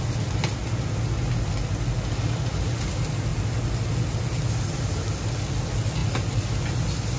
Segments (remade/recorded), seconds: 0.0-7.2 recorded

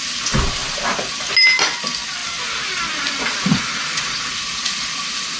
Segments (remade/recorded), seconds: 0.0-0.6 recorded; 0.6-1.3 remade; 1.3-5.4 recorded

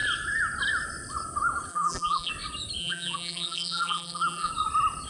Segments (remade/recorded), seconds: 0.0-1.7 recorded; 1.7-2.3 remade; 2.3-2.8 recorded; 2.8-4.5 remade; 4.5-5.1 recorded